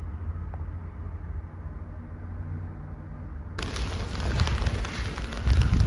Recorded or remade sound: recorded